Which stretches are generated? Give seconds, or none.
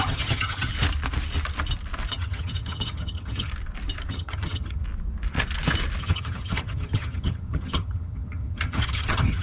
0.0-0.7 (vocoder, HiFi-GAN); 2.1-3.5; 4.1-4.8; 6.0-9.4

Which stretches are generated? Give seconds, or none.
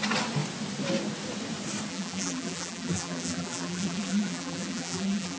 1.9-5.4 (vocoder, BigVGAN v2)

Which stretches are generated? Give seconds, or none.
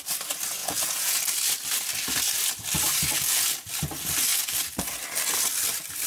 0.6-1.2 (vocoder, Vocos)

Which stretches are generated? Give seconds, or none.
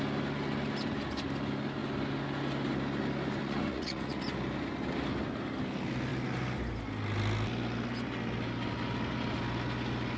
3.4-4.2 (vocoder, Vocos)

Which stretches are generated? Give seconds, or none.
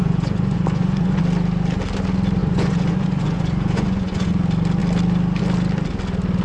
0.0-1.2 (vocoder, Vocos); 2.4-4.3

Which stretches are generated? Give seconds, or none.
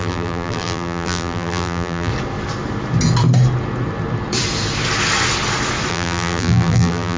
0.0-2.1 (vocoder, BigVGAN v2); 5.9-7.2